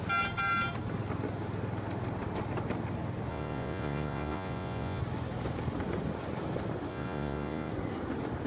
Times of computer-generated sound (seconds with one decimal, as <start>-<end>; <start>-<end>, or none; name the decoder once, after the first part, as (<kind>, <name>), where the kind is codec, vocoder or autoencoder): 3.3-5.0 (vocoder, Vocos); 6.9-7.7